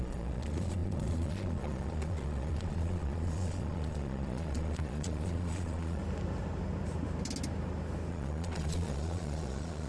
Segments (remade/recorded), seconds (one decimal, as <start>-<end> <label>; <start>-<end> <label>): 0.0-6.0 remade; 6.0-8.1 recorded; 8.1-9.9 remade